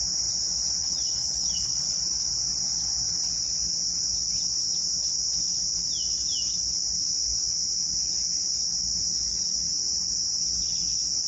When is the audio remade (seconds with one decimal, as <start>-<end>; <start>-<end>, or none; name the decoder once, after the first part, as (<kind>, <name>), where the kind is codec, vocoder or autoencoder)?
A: 0.8-2.0 (codec, HILCodec)